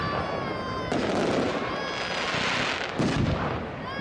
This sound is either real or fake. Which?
real